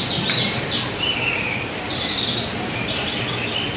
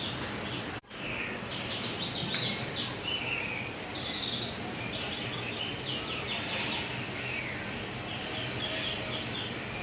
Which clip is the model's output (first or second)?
first